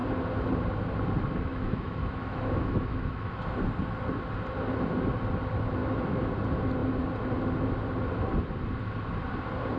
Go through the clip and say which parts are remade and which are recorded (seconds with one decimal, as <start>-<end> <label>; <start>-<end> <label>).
0.0-1.5 recorded; 1.5-3.6 remade; 3.6-5.8 recorded; 5.8-6.3 remade; 6.3-9.8 recorded